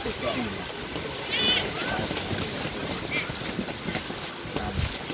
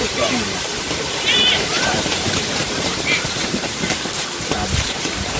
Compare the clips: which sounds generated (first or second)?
second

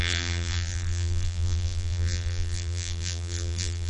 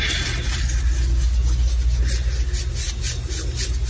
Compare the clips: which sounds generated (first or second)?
first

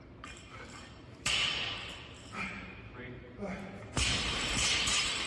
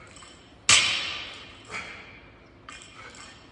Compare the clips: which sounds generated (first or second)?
first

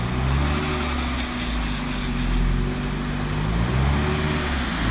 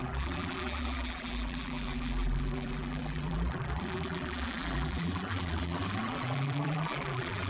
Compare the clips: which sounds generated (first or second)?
second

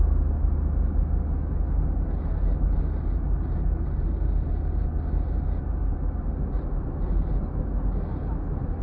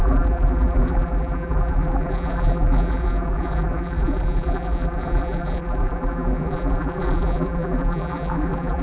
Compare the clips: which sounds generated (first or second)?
second